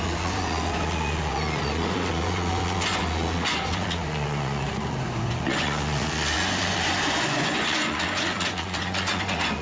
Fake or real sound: fake